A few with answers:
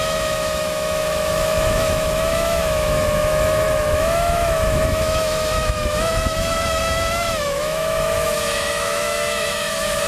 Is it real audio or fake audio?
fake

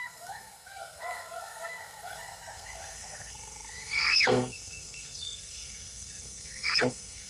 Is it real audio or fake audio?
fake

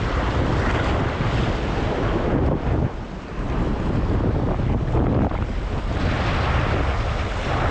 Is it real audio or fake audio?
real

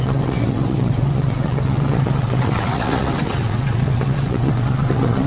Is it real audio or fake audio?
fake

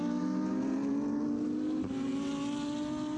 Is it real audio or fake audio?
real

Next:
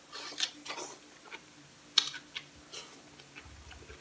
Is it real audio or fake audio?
real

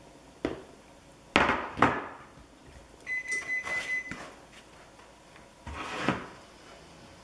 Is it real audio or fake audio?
real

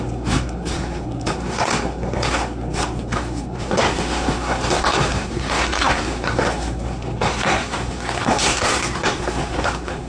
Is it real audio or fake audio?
fake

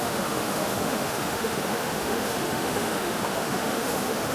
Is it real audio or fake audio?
fake